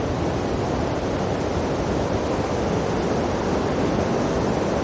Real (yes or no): yes